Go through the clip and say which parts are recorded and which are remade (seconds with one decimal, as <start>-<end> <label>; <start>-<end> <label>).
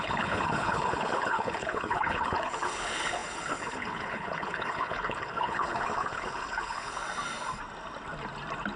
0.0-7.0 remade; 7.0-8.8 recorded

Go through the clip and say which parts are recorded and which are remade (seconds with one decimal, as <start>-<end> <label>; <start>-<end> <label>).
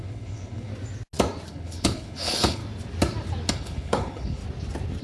0.0-0.7 remade; 0.7-1.5 recorded; 1.5-2.6 remade; 2.6-3.5 recorded; 3.5-4.4 remade; 4.4-5.0 recorded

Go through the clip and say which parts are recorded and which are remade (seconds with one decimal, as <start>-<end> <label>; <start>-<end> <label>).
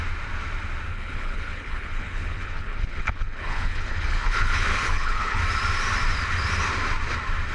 0.0-0.9 recorded; 0.9-5.4 remade; 5.4-7.5 recorded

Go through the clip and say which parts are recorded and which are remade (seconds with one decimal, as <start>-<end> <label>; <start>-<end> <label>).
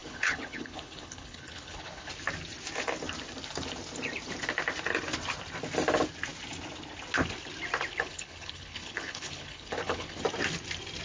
0.0-2.1 remade; 2.1-7.9 recorded; 7.9-10.2 remade; 10.2-11.0 recorded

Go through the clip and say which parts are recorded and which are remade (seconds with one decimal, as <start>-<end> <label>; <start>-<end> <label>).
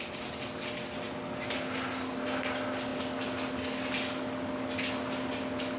0.0-5.8 recorded